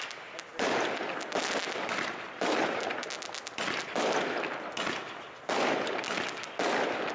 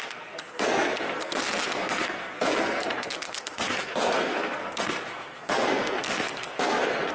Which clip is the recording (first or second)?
first